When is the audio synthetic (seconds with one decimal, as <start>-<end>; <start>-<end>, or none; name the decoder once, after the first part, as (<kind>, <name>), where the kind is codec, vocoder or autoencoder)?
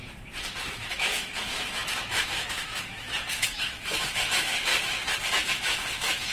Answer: 0.6-4.7 (autoencoder, DAC-VAE); 5.3-6.3